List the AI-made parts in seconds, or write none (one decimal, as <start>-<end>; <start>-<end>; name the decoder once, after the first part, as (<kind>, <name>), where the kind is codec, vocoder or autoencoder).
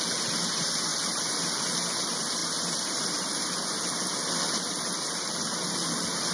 none